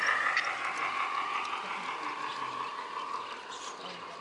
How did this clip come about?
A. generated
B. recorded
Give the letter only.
B